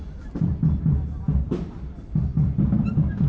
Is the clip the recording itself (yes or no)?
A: no